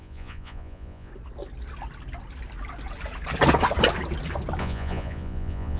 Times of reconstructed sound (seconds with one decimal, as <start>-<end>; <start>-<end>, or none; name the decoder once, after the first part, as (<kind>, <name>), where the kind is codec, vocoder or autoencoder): 0.0-1.1 (vocoder, Vocos); 4.6-5.8